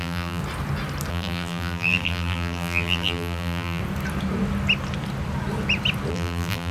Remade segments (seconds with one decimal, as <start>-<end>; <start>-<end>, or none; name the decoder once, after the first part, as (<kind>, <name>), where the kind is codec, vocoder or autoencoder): 0.0-0.4 (vocoder, BigVGAN v2); 1.1-3.8; 6.1-6.7

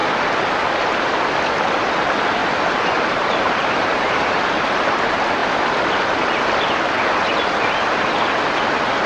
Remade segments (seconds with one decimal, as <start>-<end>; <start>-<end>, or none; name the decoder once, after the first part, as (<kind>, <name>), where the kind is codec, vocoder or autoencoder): 2.4-4.4 (vocoder, BigVGAN v2)